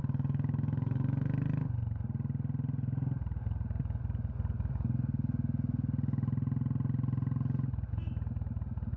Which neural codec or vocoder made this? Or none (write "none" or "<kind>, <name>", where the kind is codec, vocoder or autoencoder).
none